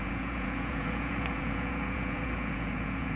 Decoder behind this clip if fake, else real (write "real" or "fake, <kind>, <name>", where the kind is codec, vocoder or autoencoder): fake, vocoder, Vocos